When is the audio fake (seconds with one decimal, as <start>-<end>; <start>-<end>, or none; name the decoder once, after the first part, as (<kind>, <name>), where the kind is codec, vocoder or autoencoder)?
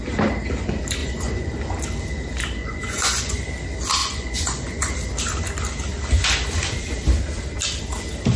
1.0-1.6 (vocoder, Vocos); 2.6-3.5; 4.0-4.8